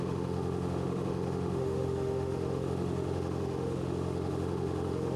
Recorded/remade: remade